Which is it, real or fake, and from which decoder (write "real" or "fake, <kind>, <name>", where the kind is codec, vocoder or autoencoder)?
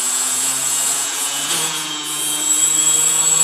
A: fake, vocoder, Vocos